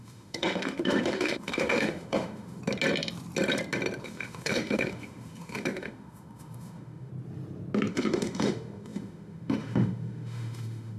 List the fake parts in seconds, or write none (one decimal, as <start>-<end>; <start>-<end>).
0.0-2.6; 4.0-7.1; 7.9-11.0